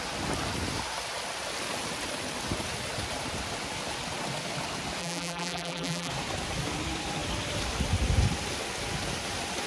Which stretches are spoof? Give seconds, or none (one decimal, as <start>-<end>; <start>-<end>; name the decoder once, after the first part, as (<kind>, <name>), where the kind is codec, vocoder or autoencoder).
5.0-6.1 (vocoder, BigVGAN v2)